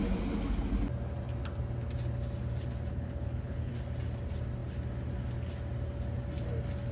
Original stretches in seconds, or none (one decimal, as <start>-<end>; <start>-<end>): 0.0-2.9; 3.7-6.9